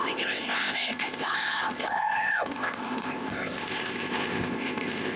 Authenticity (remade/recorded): remade